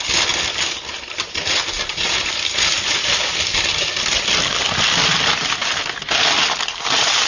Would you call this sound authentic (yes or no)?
yes